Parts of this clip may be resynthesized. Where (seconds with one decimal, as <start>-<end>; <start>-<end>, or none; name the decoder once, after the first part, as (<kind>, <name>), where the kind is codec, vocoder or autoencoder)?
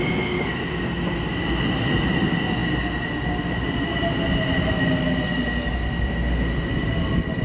none